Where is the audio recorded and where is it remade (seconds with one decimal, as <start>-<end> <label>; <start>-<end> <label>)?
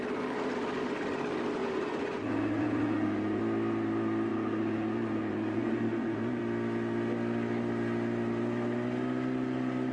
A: 0.0-1.6 recorded; 1.6-3.4 remade; 3.4-4.3 recorded; 4.3-6.4 remade; 6.4-9.9 recorded